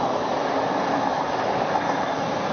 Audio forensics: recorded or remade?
recorded